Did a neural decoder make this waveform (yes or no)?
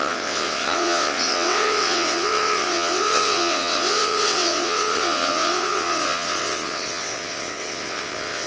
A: yes